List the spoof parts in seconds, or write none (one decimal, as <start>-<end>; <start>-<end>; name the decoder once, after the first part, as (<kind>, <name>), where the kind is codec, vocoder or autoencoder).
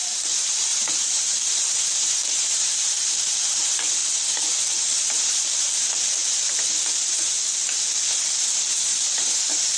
0.0-4.0 (vocoder, BigVGAN v2); 4.8-6.2; 8.4-9.8